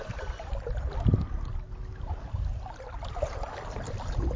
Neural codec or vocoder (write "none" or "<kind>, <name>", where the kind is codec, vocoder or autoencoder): none